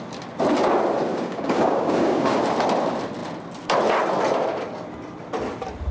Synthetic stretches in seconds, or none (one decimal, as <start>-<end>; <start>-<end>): 1.1-2.4